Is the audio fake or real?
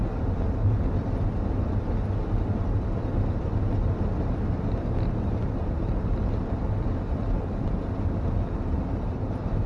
real